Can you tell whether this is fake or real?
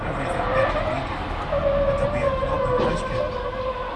real